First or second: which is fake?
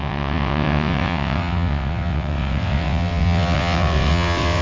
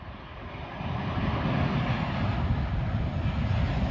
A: first